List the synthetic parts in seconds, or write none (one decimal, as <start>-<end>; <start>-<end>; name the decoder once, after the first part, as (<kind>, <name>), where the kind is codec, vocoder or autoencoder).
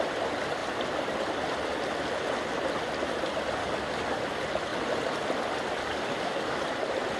3.6-4.2 (codec, DAC); 5.8-6.6